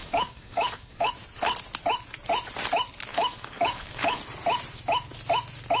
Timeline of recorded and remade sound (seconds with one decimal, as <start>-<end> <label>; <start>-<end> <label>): 0.0-1.1 remade; 1.1-3.1 recorded; 3.1-4.2 remade; 4.2-5.8 recorded